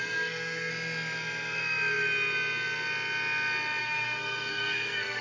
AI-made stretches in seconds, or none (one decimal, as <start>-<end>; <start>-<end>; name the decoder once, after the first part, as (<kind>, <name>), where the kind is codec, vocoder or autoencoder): 0.0-0.7 (codec, SNAC); 3.8-5.2